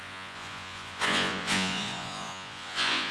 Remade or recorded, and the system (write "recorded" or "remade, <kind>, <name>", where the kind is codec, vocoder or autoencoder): remade, vocoder, Vocos